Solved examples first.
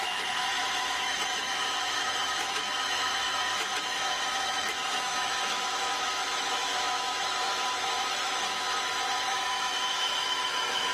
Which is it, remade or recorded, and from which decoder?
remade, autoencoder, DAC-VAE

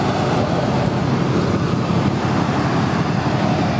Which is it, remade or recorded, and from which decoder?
recorded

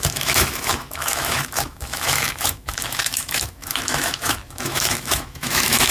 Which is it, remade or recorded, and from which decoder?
remade, autoencoder, DAC-VAE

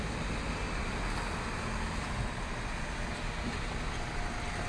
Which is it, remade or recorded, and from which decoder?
recorded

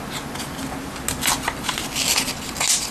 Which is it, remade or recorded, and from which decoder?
recorded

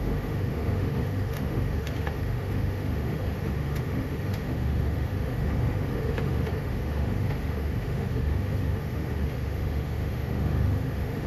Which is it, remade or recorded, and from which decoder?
remade, autoencoder, DAC-VAE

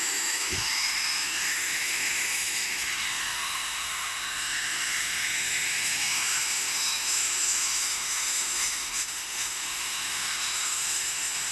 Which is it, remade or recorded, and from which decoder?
remade, autoencoder, DAC-VAE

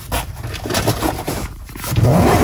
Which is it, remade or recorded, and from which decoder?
recorded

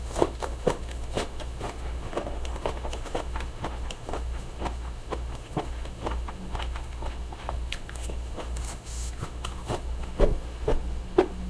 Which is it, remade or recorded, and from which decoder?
remade, autoencoder, DAC-VAE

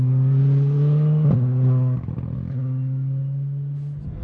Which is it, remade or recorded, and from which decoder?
recorded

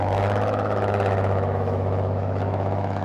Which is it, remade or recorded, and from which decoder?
remade, autoencoder, DAC-VAE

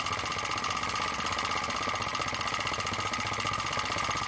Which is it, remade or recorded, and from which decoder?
recorded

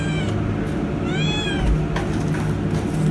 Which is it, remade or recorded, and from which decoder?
recorded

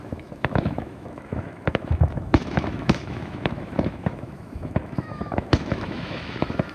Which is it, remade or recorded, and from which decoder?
remade, autoencoder, DAC-VAE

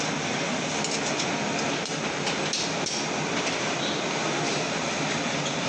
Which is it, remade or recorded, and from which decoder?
recorded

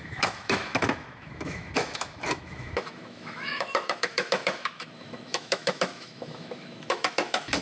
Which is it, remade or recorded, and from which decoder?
remade, autoencoder, DAC-VAE